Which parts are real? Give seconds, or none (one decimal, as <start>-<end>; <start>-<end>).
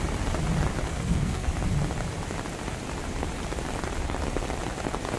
0.0-0.9; 1.5-5.2